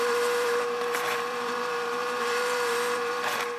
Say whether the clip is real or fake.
fake